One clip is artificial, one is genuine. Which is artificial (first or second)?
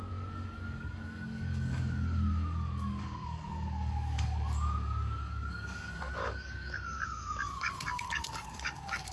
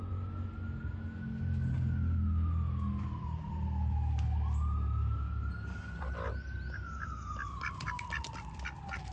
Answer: first